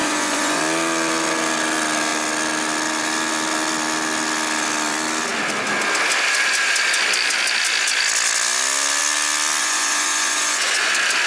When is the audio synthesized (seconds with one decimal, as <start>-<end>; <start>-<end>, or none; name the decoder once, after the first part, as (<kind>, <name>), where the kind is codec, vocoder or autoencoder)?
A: 0.0-0.6 (vocoder, Vocos); 9.6-10.9

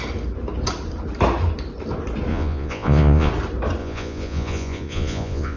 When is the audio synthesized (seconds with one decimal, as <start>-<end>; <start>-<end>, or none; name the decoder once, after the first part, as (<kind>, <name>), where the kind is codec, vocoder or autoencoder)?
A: 2.3-3.3 (vocoder, Vocos); 3.8-5.6

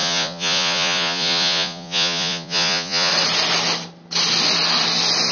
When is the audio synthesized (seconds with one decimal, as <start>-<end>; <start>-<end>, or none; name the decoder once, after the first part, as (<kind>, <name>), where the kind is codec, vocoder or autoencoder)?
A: 0.0-3.1 (vocoder, Vocos)

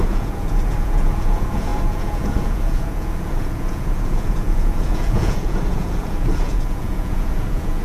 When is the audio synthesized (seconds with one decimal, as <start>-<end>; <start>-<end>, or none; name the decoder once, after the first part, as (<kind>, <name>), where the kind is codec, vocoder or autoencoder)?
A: 0.0-7.8 (vocoder, Vocos)

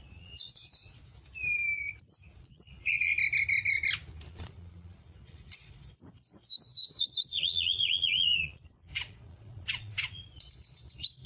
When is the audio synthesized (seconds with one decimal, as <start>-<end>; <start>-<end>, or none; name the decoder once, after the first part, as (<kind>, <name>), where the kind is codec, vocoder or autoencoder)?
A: 0.0-1.0 (vocoder, Vocos); 2.3-3.1; 4.3-11.3

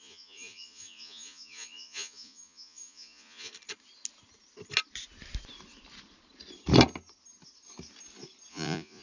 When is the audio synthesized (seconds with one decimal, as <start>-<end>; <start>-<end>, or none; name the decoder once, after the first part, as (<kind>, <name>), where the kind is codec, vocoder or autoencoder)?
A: 0.0-3.5 (vocoder, Vocos); 8.5-9.0

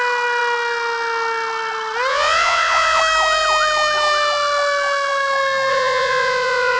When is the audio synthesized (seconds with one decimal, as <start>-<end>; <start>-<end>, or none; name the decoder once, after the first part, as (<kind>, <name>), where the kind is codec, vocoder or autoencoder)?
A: 2.1-3.0 (vocoder, Vocos); 5.7-6.8